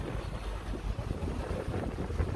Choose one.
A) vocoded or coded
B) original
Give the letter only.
B